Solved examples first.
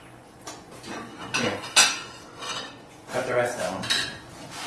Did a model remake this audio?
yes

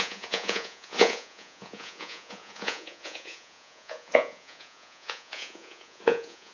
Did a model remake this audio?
yes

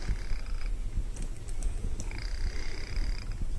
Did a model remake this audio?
no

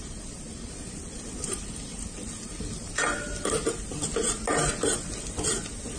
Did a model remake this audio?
no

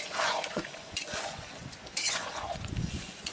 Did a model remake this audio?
yes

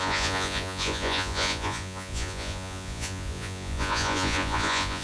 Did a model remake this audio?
yes